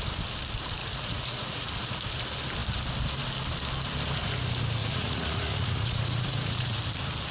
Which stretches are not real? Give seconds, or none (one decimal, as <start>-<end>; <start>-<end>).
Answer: 0.8-1.7; 4.8-6.8